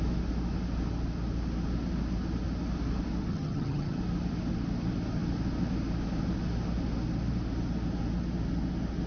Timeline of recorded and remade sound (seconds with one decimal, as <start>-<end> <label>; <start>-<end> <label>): 0.0-3.3 recorded; 3.3-4.0 remade; 4.0-9.1 recorded